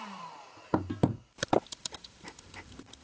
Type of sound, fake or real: fake